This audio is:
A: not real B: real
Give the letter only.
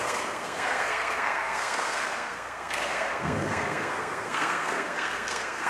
A